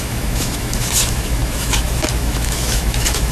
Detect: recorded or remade remade